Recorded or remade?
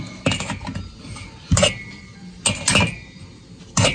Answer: recorded